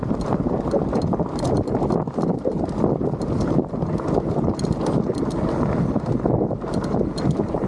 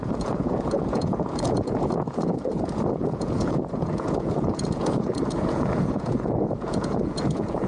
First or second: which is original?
first